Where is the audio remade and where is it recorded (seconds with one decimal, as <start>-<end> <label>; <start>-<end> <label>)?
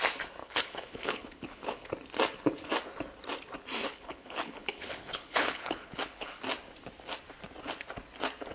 0.0-0.4 recorded; 0.4-1.9 remade; 1.9-3.9 recorded; 3.9-6.4 remade; 6.4-8.5 recorded